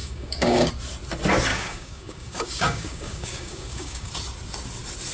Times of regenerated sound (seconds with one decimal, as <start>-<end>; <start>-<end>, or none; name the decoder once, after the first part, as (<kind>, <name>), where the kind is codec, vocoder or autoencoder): 0.0-0.7 (codec, DAC); 1.5-4.1